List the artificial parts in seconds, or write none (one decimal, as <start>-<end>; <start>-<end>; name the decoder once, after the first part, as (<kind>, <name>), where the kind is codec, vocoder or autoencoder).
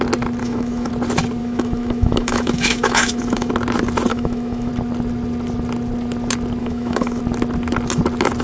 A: 0.4-0.9 (autoencoder, DAC-VAE); 1.4-3.5; 4.1-4.7; 6.6-7.2